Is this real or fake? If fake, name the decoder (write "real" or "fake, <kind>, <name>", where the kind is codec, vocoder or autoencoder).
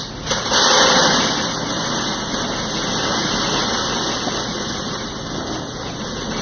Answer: real